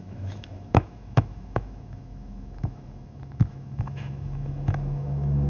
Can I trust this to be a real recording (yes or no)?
no